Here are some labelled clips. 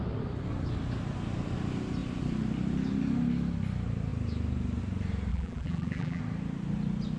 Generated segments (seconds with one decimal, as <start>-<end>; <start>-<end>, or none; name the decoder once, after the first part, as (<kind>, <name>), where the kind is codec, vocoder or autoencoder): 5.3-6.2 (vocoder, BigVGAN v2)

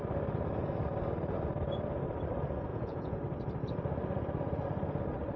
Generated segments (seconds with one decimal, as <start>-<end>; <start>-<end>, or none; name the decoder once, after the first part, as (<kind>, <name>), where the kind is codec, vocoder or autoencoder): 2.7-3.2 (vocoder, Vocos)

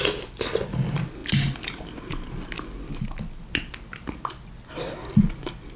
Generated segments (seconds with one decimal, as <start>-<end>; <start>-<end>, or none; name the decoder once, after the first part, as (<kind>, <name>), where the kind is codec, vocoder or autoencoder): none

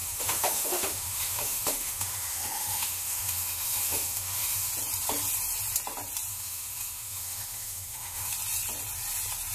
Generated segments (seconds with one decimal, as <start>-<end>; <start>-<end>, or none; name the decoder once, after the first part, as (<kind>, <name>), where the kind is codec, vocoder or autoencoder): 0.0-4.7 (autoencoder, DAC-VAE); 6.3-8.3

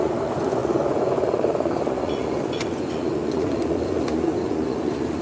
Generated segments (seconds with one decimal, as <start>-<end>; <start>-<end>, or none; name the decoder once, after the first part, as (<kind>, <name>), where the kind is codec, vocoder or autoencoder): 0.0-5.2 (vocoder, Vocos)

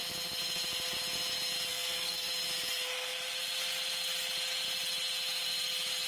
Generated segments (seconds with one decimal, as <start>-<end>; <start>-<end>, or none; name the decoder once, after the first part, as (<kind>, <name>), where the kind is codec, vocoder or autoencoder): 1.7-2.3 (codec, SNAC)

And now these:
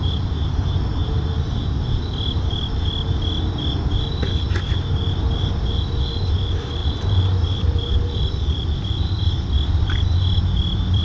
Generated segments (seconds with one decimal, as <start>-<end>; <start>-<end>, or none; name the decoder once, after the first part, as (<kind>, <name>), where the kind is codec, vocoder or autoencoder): 1.0-3.6 (vocoder, BigVGAN v2); 6.8-11.0